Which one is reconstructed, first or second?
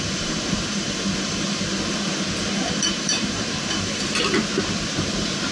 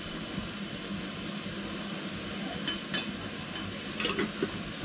first